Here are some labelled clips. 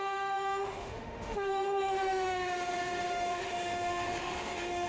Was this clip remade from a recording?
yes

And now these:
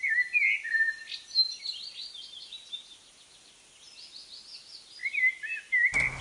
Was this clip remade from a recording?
no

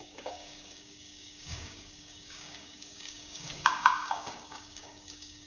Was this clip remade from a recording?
yes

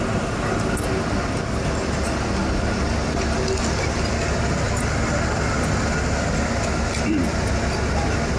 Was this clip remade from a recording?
no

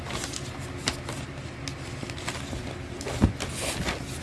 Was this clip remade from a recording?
no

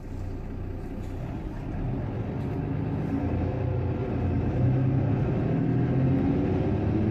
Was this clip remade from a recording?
no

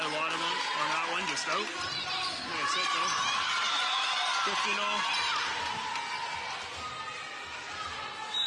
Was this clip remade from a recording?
no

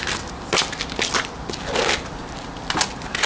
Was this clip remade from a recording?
no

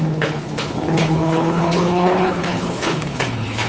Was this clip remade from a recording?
yes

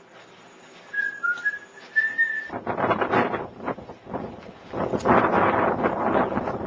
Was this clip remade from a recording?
no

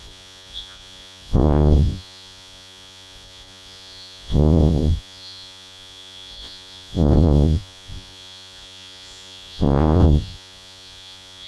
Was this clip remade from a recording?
yes